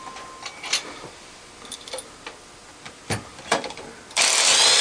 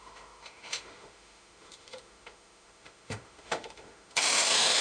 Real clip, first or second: first